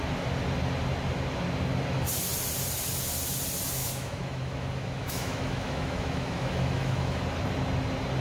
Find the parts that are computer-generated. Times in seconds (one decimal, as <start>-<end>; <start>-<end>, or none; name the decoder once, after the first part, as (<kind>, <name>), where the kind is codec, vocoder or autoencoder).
3.8-7.2 (autoencoder, DAC-VAE)